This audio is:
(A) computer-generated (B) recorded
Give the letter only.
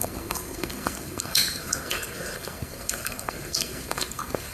A